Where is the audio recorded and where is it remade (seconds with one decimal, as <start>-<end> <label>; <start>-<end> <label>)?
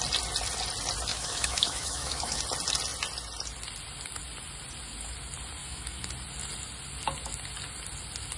0.0-1.1 recorded; 1.1-2.4 remade; 2.4-5.6 recorded; 5.6-6.1 remade; 6.1-8.4 recorded